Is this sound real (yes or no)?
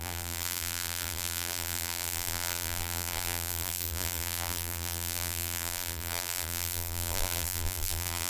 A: no